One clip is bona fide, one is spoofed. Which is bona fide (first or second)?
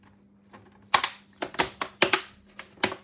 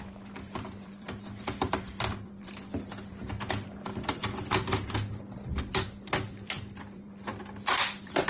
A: first